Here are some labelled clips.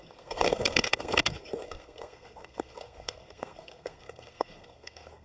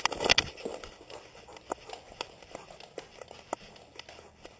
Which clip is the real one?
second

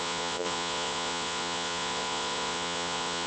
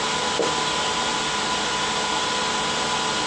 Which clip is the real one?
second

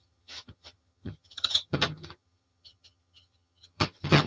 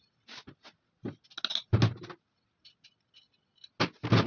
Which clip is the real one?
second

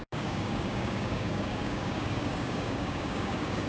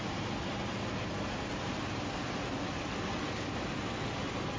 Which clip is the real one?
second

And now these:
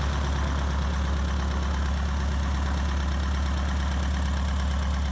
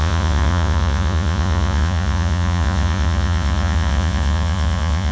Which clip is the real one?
first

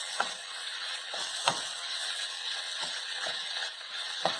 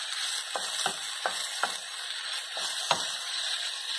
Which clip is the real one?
second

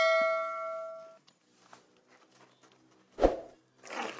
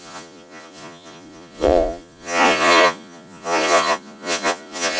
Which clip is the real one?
first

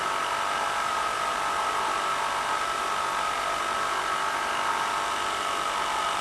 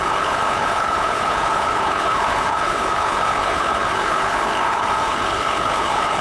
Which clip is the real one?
first